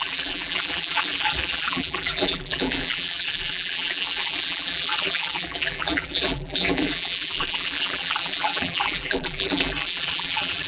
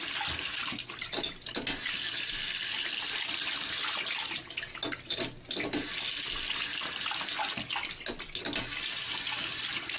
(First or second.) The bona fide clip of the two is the second